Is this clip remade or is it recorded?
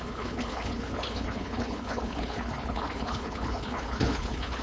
remade